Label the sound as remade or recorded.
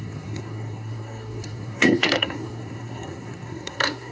remade